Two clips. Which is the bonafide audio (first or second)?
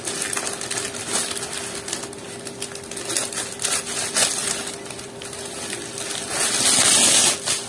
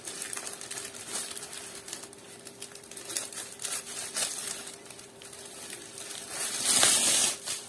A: first